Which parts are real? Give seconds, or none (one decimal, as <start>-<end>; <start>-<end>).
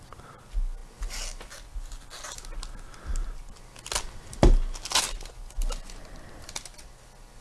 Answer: 0.0-7.4